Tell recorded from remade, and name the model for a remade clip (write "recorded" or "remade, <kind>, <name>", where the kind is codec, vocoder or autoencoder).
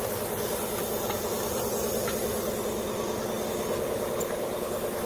recorded